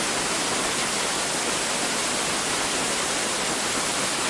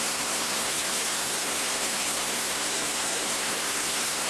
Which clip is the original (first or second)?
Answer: first